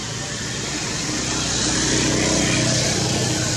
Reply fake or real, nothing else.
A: real